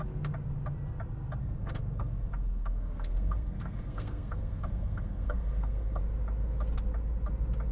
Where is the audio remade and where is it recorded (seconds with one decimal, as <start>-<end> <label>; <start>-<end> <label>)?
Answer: 0.0-1.4 recorded; 1.4-6.0 remade; 6.0-7.7 recorded